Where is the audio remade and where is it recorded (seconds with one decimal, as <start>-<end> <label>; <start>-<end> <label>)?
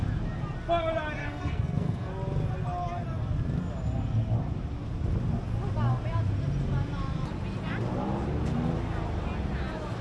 0.0-1.2 recorded; 1.2-2.1 remade; 2.1-10.0 recorded